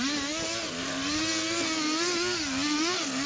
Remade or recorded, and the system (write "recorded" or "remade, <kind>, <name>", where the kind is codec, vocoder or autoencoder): recorded